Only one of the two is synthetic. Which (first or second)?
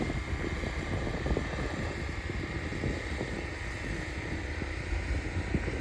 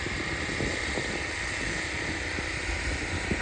second